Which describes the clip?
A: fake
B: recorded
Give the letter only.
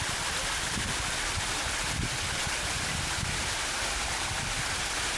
B